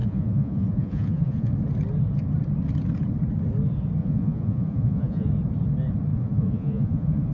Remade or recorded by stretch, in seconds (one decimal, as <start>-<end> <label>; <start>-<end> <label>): 0.0-1.5 remade; 1.5-4.0 recorded; 4.0-5.3 remade; 5.3-6.1 recorded; 6.1-7.3 remade

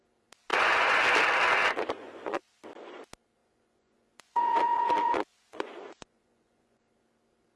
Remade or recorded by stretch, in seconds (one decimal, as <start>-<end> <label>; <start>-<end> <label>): 0.0-0.5 recorded; 0.5-1.0 remade; 1.0-1.6 recorded; 1.6-2.4 remade; 2.4-3.4 recorded; 3.4-6.8 remade; 6.8-7.6 recorded

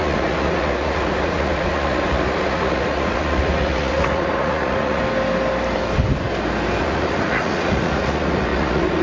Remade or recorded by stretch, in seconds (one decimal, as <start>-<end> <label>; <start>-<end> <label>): 0.0-5.0 remade; 5.0-6.8 recorded; 6.8-9.0 remade

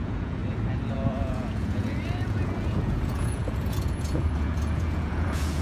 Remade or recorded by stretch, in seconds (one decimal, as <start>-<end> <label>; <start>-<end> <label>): 0.0-0.4 remade; 0.4-0.9 recorded; 0.9-5.6 remade

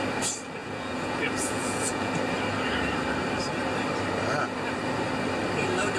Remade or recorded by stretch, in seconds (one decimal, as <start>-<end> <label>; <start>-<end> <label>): 0.0-0.6 recorded; 0.6-2.1 remade; 2.1-6.0 recorded

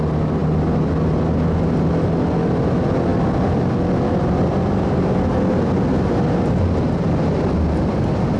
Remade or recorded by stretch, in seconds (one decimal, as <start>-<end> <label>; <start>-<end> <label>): 0.0-8.4 recorded

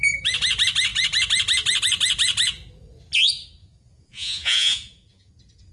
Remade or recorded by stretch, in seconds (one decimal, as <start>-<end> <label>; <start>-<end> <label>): 0.0-3.6 recorded; 3.6-5.3 remade; 5.3-5.7 recorded

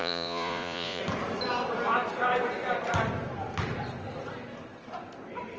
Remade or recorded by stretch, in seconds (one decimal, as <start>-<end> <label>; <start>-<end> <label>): 0.0-1.0 remade; 1.0-5.6 recorded